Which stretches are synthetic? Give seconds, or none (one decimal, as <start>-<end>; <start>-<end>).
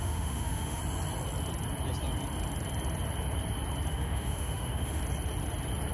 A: 0.0-0.8; 3.9-5.0